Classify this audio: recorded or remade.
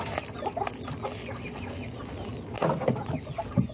recorded